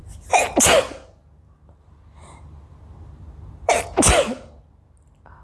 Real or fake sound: real